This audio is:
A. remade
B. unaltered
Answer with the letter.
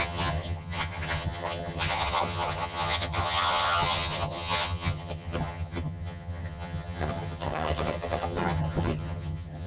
A